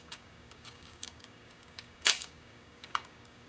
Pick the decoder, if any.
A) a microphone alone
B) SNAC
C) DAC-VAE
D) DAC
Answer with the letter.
D